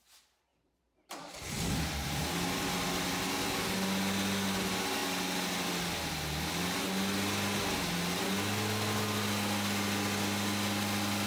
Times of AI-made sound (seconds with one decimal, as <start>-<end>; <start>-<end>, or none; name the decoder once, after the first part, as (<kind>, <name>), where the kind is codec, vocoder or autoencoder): 0.5-2.2 (vocoder, BigVGAN v2)